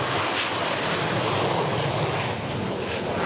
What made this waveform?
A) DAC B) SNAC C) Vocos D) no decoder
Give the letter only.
D